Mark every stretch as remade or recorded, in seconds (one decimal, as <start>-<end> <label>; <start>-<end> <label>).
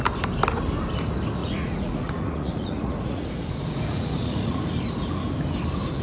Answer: 0.0-1.4 recorded; 1.4-4.7 remade; 4.7-6.0 recorded